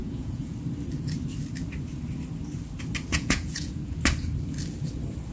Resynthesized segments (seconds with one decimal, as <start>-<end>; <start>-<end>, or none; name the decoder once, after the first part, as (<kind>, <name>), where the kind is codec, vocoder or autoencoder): 0.0-0.6 (vocoder, Vocos); 3.1-4.0